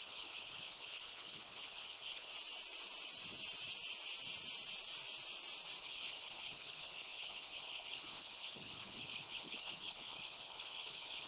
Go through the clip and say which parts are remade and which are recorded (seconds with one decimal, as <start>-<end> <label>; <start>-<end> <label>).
0.0-2.3 remade; 2.3-5.8 recorded; 5.8-11.3 remade